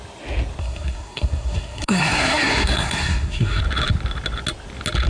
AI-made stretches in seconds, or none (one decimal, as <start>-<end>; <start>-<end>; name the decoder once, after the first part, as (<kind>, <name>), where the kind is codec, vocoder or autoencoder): 0.6-3.6 (codec, SNAC)